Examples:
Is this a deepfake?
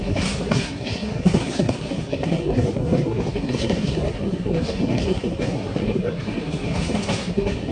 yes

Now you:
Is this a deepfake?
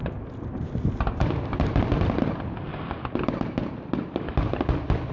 no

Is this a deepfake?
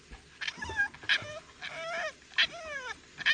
no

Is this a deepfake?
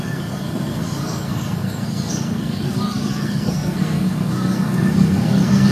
yes